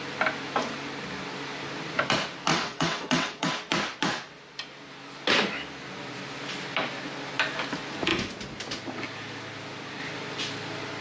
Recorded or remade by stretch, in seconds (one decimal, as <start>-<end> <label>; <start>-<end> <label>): 0.0-2.5 recorded; 2.5-3.5 remade; 3.5-11.0 recorded